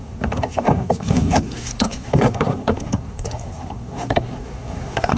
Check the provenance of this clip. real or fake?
fake